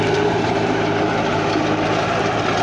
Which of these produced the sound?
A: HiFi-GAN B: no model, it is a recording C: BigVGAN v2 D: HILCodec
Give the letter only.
C